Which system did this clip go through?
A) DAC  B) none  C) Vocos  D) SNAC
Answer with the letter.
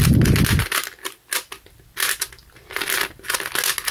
B